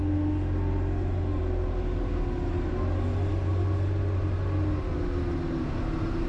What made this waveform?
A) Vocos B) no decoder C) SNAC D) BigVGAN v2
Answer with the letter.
B